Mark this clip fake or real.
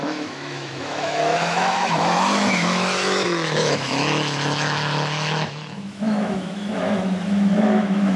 fake